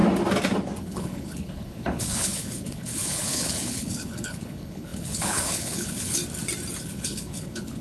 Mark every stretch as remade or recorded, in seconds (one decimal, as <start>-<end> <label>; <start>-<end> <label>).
0.0-0.8 recorded; 0.8-6.2 remade; 6.2-6.8 recorded; 6.8-7.8 remade